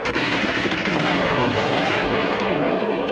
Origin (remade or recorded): remade